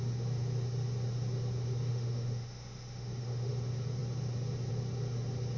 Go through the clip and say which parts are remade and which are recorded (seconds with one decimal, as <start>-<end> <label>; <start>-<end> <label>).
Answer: 0.0-1.9 recorded; 1.9-3.5 remade; 3.5-5.6 recorded